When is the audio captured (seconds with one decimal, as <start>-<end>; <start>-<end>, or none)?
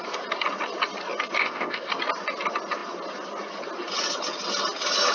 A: 0.0-1.4; 1.9-5.1